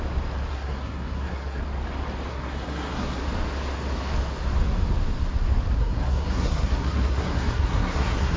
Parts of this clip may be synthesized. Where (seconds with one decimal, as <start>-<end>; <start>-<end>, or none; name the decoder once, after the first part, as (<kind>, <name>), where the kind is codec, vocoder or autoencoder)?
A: 0.5-1.6 (codec, SNAC); 2.3-3.2; 5.8-8.4